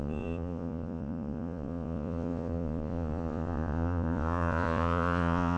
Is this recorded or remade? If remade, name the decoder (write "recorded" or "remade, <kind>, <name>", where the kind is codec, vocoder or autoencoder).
remade, vocoder, Vocos